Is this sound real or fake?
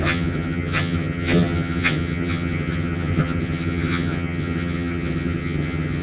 fake